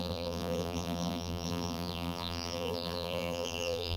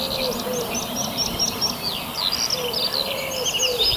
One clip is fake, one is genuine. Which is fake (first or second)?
first